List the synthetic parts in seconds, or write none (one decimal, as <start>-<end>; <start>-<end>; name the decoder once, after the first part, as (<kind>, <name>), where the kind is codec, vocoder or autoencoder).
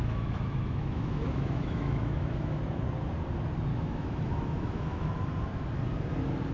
0.0-2.6 (autoencoder, DAC-VAE); 3.7-5.1